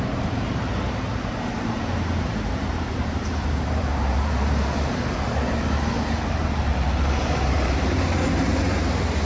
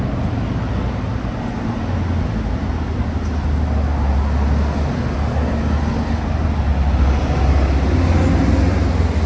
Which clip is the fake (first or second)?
first